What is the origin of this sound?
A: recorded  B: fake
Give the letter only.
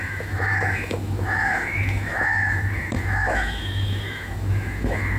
B